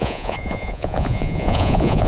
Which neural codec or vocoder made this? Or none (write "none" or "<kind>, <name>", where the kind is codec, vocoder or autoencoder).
vocoder, Vocos